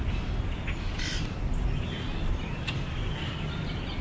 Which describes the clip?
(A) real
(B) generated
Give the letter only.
A